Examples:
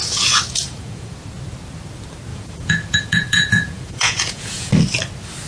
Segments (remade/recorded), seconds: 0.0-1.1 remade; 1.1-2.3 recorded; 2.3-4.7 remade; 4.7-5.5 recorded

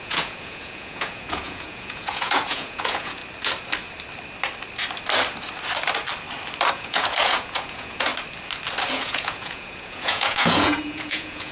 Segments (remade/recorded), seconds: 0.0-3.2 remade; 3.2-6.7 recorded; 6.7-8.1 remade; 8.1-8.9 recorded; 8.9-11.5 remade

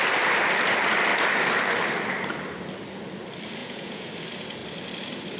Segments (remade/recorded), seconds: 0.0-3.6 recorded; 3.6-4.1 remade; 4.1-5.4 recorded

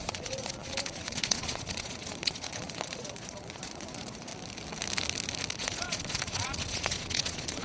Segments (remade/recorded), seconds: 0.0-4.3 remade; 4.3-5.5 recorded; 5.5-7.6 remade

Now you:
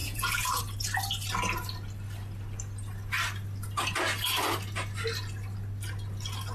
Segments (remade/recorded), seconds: 0.0-0.6 remade; 0.6-6.5 recorded

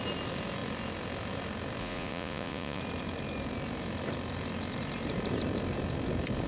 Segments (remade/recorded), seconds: 0.0-1.8 recorded; 1.8-2.8 remade; 2.8-6.5 recorded